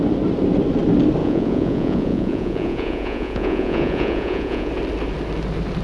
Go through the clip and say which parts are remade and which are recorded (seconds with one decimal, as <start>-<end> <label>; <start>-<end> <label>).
0.0-1.2 recorded; 1.2-4.7 remade; 4.7-5.8 recorded